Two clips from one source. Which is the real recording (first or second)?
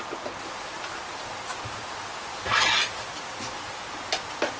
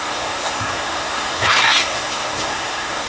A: first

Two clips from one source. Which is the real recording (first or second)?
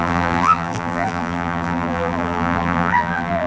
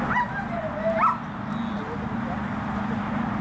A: second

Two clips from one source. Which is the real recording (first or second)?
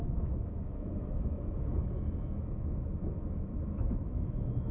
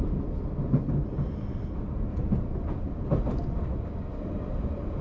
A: second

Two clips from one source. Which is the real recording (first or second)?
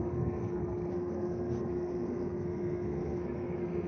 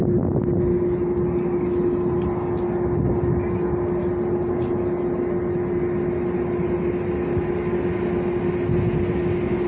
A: second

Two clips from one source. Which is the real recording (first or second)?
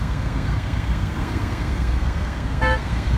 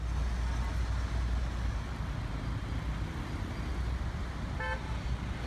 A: second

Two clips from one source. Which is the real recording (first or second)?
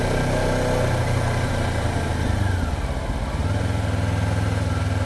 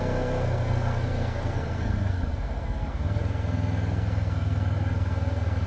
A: first